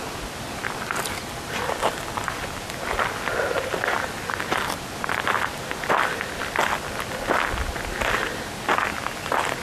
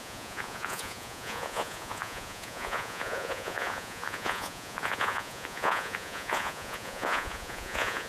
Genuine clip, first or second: first